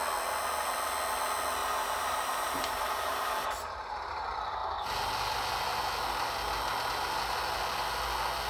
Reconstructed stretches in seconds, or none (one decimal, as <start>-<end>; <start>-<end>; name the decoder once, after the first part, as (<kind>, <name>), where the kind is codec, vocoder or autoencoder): 1.6-4.1 (vocoder, BigVGAN v2)